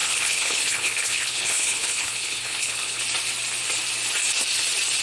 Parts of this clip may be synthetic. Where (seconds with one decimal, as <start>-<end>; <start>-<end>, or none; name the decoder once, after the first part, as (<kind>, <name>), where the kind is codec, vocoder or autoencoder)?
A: 0.0-3.0 (codec, HILCodec)